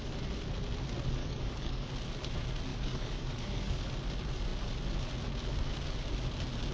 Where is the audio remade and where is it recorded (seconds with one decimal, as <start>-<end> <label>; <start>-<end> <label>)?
0.0-1.2 recorded; 1.2-1.9 remade; 1.9-2.7 recorded; 2.7-3.9 remade; 3.9-6.7 recorded